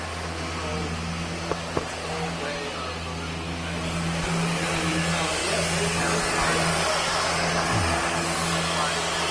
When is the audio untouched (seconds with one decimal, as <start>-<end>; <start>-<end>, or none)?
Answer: 0.0-9.3